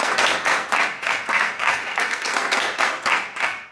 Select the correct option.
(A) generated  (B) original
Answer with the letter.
A